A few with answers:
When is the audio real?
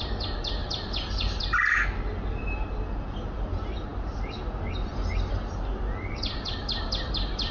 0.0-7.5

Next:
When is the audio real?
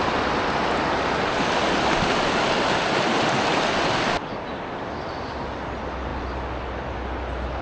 0.0-7.6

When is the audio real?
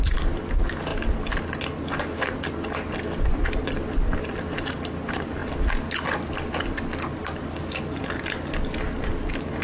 0.0-9.6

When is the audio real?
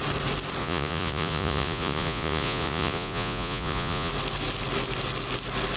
0.0-0.6; 4.1-5.8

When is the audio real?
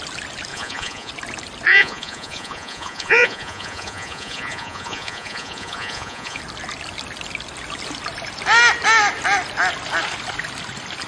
0.0-0.5; 1.1-1.7; 6.4-11.1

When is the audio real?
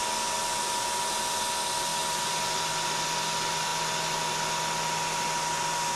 0.0-6.0